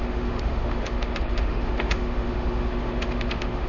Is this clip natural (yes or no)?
no